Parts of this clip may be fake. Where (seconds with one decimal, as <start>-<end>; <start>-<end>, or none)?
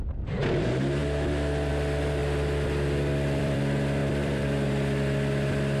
1.0-1.7; 2.2-3.6; 4.0-4.7